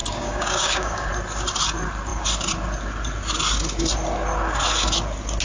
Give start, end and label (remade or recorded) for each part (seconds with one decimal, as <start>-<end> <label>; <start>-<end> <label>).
0.0-1.1 remade; 1.1-5.4 recorded